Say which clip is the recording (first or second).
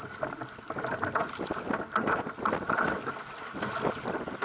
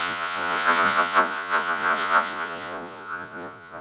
first